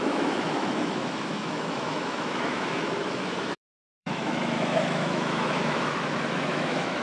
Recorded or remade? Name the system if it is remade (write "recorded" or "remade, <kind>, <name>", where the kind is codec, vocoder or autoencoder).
remade, autoencoder, DAC-VAE